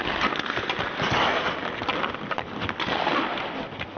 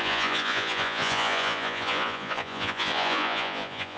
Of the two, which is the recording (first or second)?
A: first